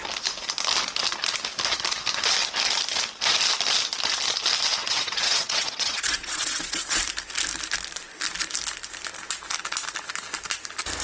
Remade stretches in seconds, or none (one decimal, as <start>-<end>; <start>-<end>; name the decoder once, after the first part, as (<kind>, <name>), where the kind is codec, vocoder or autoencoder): 4.8-7.0 (vocoder, WaveNeXt)